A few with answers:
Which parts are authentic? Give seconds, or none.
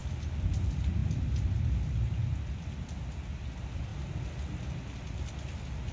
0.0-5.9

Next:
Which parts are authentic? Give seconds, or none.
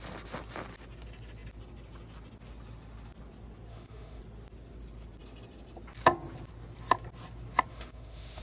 0.0-3.7; 4.2-7.7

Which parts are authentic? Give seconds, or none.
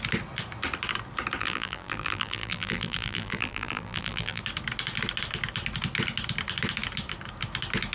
0.0-1.4; 4.4-7.9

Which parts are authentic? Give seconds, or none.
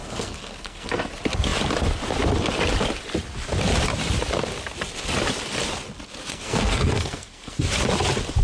1.1-6.3; 7.7-8.4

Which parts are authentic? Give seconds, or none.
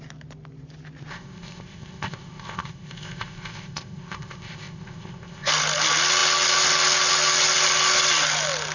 0.0-1.1; 5.5-8.7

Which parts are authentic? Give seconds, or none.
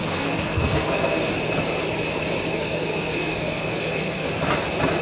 1.3-2.5; 4.3-5.0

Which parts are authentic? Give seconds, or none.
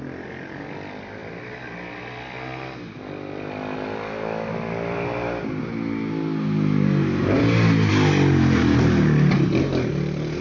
0.0-10.4